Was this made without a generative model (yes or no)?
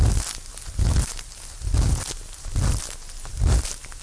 yes